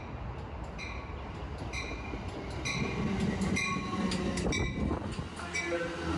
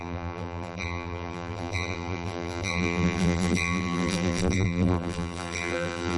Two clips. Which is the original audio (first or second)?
first